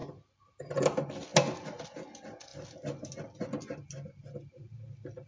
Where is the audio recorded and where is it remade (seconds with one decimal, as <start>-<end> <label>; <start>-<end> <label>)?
0.0-5.3 recorded